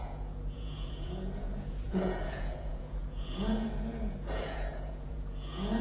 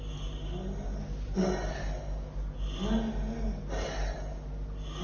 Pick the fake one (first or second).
first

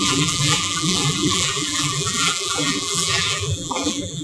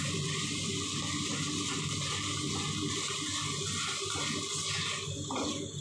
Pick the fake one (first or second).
first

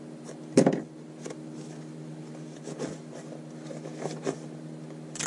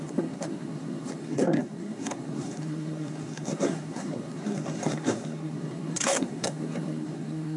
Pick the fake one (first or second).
second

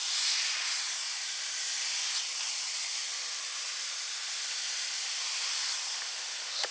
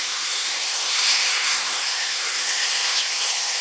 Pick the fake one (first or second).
second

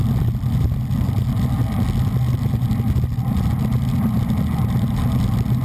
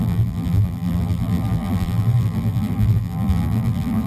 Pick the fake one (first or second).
second